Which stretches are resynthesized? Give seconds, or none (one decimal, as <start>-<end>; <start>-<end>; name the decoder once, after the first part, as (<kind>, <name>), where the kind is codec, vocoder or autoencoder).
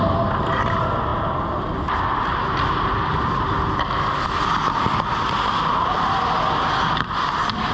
none